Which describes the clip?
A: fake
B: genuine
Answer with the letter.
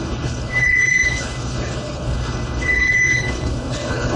A